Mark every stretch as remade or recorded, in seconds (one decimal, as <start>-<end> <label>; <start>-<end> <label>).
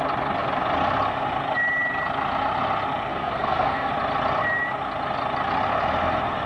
0.0-3.1 recorded; 3.1-3.9 remade; 3.9-6.5 recorded